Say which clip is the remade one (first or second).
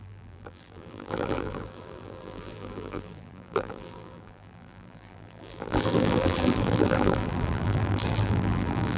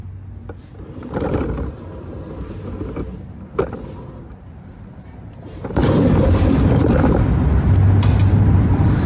first